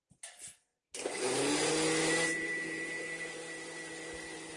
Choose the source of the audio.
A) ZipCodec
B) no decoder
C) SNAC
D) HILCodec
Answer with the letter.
B